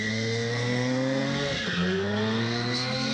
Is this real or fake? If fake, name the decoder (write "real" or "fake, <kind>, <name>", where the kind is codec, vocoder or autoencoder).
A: fake, codec, SNAC